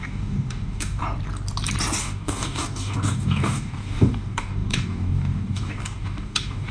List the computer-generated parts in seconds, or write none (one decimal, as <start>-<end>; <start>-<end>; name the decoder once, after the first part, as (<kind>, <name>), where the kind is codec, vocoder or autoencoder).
0.0-1.0 (codec, DAC); 2.0-6.7